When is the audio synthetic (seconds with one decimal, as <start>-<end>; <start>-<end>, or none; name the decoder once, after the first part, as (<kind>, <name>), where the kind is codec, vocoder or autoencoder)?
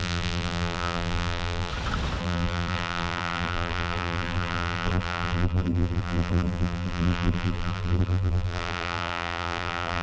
0.0-1.7 (vocoder, BigVGAN v2); 2.2-10.0